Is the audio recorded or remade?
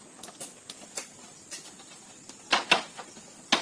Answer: recorded